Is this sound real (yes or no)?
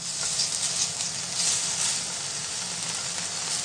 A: yes